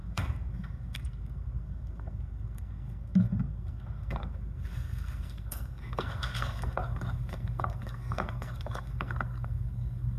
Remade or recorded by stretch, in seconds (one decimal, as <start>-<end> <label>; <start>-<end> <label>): 0.0-10.2 remade